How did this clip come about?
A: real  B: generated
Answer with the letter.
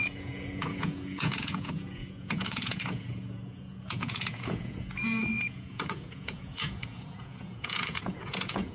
B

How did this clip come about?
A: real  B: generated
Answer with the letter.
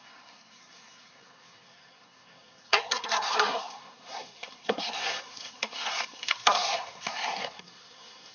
B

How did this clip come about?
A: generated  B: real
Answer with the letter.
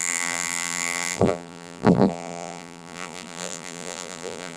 A